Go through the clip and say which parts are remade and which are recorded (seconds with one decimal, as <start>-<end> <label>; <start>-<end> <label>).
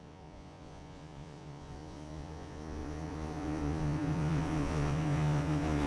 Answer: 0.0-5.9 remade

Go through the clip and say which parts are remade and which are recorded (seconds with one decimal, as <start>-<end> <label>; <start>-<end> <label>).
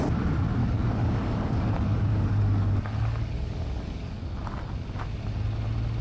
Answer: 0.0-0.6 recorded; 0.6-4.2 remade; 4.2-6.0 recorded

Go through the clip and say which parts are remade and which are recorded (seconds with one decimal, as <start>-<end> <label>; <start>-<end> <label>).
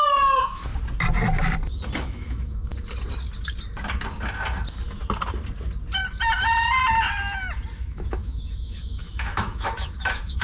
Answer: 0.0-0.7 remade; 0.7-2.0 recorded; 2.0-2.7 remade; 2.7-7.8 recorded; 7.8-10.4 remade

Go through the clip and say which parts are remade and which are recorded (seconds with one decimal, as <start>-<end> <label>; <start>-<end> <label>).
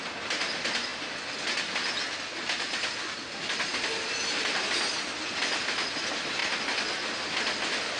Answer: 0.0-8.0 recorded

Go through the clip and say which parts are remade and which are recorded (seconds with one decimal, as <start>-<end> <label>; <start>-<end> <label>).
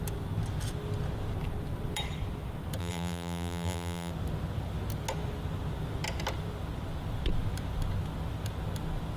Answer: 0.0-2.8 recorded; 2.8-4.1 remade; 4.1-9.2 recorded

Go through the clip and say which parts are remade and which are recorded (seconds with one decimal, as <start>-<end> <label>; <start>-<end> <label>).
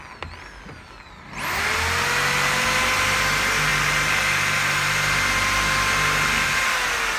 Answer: 0.0-7.2 recorded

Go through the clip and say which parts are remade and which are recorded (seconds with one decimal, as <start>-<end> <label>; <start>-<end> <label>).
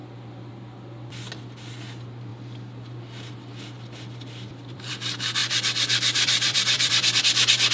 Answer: 0.0-0.5 remade; 0.5-2.3 recorded; 2.3-4.9 remade; 4.9-5.4 recorded; 5.4-7.2 remade; 7.2-7.7 recorded